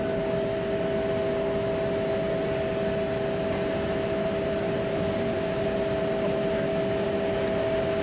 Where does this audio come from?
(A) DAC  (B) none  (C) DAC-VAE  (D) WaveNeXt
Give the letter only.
B